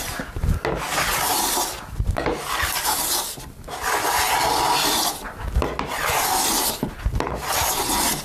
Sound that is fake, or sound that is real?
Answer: real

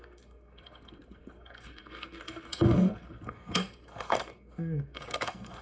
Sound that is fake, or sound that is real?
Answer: fake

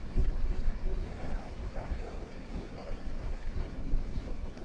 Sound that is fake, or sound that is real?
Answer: fake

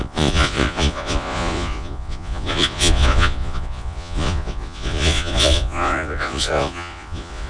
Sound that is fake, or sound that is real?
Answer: fake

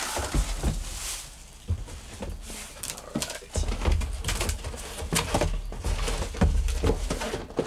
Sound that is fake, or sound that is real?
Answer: real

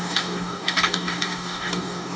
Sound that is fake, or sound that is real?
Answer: fake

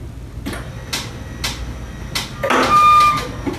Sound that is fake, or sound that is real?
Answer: real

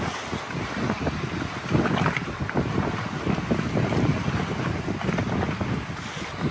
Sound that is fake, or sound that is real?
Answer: real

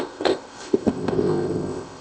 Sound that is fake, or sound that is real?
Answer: fake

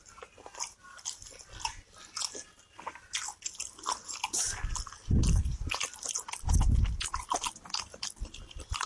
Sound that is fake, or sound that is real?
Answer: real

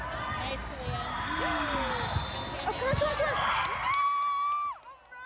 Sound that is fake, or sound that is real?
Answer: real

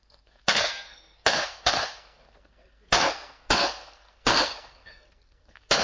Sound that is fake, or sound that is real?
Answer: fake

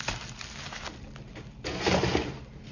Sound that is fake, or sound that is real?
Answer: real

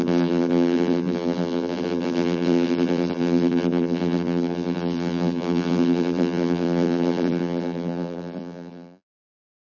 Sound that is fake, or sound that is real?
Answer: fake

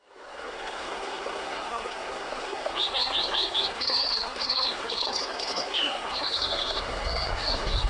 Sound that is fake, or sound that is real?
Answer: fake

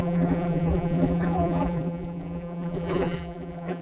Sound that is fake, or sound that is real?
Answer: fake